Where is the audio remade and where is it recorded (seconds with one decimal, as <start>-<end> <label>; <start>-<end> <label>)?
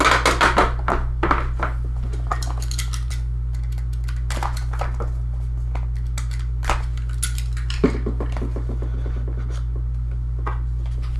0.0-11.2 recorded